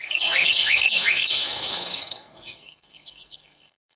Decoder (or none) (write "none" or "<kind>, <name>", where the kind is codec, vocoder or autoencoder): codec, SNAC